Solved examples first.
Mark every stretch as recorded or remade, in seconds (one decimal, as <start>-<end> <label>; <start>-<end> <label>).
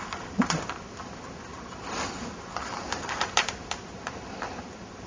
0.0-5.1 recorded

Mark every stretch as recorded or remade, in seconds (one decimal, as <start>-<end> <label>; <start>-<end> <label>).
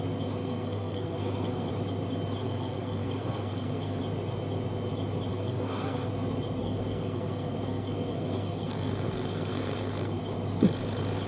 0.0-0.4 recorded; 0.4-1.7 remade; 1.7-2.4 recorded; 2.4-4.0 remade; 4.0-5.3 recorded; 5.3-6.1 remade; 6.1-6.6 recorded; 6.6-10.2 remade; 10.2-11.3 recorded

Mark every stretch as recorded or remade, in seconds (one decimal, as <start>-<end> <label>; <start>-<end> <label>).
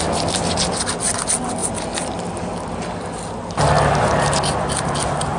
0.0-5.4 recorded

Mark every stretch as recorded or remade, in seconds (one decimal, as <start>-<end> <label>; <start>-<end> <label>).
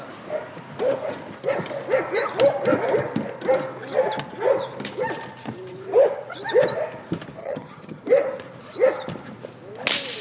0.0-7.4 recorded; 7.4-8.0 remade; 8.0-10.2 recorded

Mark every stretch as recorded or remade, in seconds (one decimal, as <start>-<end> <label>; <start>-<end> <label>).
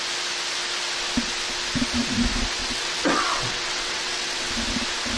0.0-2.6 recorded; 2.6-4.5 remade; 4.5-5.2 recorded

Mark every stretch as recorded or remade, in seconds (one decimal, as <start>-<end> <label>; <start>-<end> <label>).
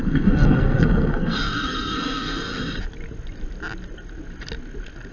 0.0-2.5 remade; 2.5-5.1 recorded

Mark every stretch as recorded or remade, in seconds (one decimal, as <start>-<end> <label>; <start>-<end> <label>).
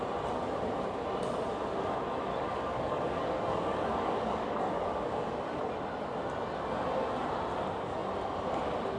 0.0-2.3 recorded; 2.3-5.4 remade; 5.4-9.0 recorded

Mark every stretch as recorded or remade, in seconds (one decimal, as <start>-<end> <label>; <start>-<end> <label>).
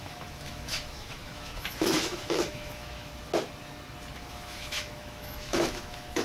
0.0-3.1 remade; 3.1-4.3 recorded; 4.3-6.2 remade